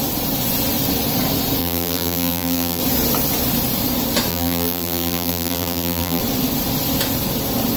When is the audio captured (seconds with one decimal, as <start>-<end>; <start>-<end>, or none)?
0.0-1.6; 2.8-4.3; 6.2-7.8